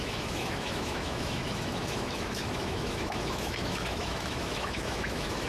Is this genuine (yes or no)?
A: no